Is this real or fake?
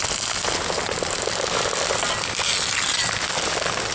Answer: real